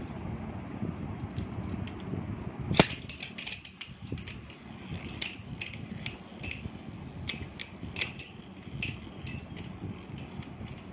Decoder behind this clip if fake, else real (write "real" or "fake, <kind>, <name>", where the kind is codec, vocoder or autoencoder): real